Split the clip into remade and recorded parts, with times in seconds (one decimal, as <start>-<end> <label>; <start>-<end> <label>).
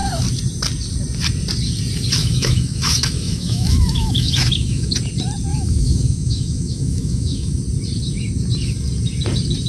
0.0-2.2 recorded; 2.2-4.9 remade; 4.9-5.5 recorded; 5.5-7.6 remade; 7.6-9.7 recorded